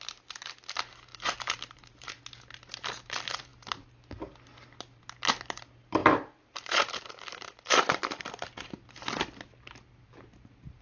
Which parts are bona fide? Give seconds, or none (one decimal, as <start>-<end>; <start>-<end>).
0.0-1.1; 2.1-6.0; 8.0-10.8